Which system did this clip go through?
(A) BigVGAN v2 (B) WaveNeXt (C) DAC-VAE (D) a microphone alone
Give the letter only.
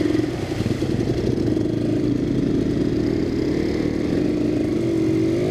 D